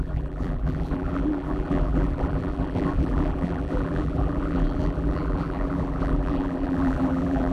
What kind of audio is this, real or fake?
fake